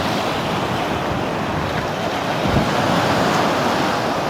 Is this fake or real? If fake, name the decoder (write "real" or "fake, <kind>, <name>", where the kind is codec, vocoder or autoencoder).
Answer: real